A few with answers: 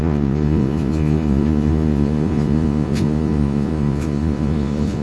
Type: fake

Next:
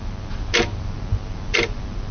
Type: real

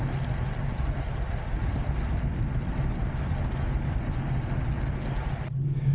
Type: real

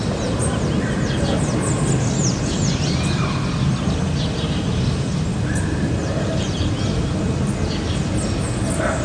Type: real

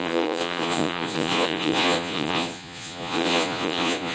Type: fake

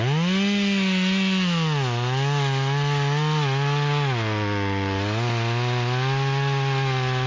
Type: real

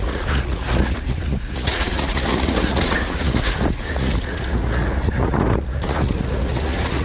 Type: fake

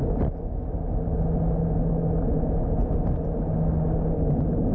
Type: real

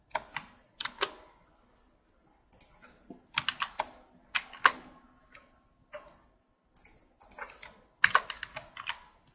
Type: real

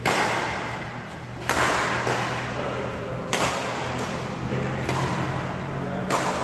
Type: real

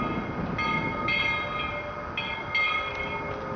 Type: real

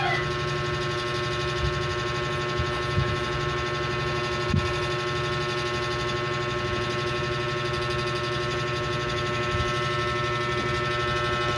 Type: real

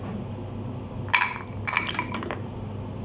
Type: real